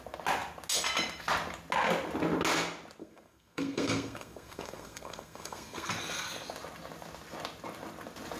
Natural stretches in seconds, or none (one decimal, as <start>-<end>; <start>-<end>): 0.0-3.0; 5.9-8.4